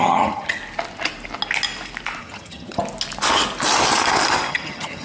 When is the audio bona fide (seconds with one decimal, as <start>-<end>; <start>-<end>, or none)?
0.6-2.2; 2.8-4.5